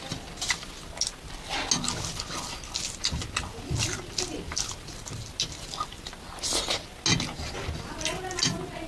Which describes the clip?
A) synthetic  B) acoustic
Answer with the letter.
B